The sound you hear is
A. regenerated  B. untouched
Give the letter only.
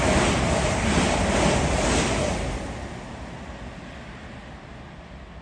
B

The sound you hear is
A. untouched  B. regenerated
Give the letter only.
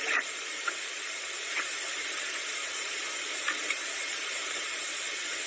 B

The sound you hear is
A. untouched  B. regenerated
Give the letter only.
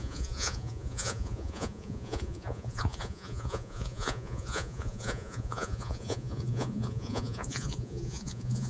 B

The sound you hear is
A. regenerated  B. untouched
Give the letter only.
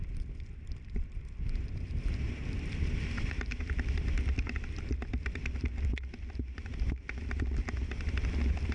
A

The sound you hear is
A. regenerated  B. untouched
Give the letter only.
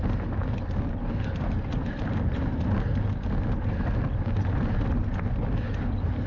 B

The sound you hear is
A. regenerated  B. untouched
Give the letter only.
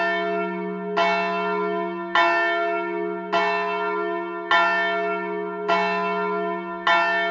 B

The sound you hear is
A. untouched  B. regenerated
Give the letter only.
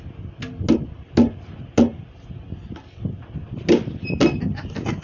A